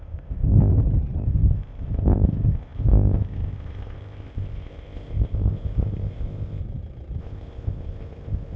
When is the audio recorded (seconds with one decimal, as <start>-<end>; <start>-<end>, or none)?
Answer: 0.7-1.2; 6.6-7.2